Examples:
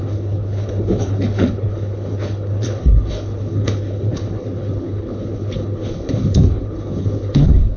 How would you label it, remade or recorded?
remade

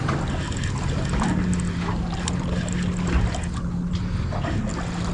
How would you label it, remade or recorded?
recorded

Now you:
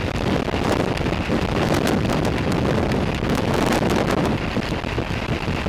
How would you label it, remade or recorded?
recorded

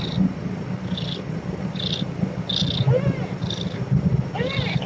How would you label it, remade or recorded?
remade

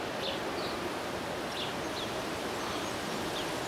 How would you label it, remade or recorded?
recorded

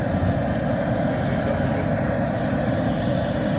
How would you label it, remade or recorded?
recorded